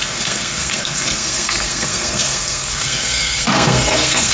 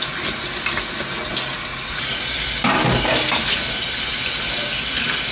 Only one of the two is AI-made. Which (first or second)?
first